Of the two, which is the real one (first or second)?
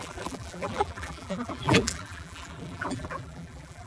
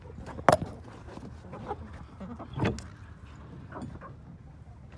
second